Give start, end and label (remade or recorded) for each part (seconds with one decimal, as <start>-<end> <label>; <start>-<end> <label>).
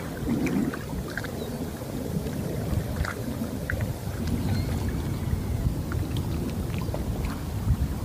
0.0-8.0 recorded